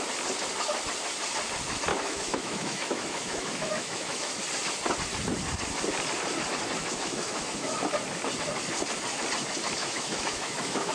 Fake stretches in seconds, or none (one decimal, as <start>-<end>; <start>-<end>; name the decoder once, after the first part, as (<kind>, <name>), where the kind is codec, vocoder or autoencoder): 1.9-4.4 (autoencoder, DAC-VAE); 6.8-7.8; 9.8-10.9